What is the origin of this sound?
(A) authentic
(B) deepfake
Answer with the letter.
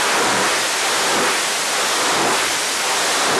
A